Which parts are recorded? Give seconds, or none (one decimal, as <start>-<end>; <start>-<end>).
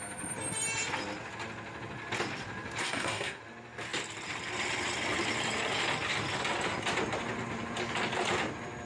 0.0-2.8; 3.4-8.9